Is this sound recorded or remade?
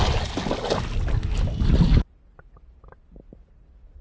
recorded